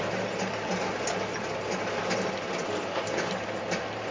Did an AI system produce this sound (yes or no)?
no